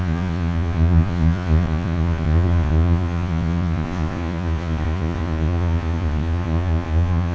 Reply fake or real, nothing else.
fake